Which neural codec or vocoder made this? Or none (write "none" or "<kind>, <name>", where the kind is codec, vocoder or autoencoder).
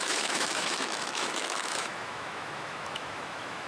autoencoder, DAC-VAE